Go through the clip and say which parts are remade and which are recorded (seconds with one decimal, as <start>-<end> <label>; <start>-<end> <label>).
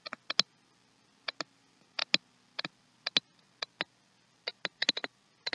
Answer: 0.0-5.5 recorded